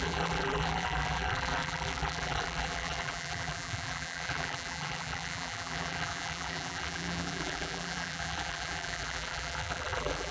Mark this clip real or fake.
fake